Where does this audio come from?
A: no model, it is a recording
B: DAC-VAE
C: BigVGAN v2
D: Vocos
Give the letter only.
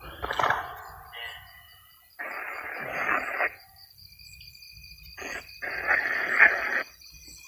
A